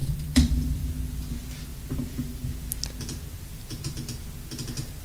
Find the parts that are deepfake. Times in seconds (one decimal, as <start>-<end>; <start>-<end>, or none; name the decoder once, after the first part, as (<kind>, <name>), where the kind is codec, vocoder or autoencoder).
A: 0.0-0.9 (vocoder, BigVGAN v2)